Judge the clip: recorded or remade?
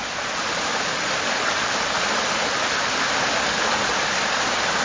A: recorded